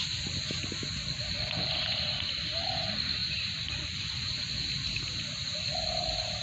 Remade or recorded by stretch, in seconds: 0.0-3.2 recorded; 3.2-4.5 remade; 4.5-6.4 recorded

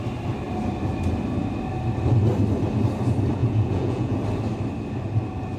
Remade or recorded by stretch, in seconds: 0.0-3.4 recorded; 3.4-4.2 remade; 4.2-5.6 recorded